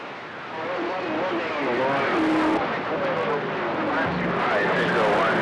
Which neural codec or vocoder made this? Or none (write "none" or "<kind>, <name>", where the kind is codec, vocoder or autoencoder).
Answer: none